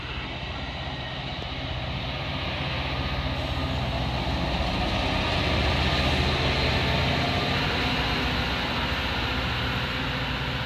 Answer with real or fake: real